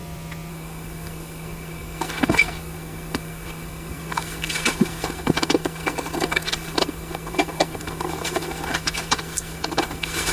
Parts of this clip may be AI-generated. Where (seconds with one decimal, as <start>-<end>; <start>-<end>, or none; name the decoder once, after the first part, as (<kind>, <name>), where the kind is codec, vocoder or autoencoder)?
0.5-10.3 (codec, SNAC)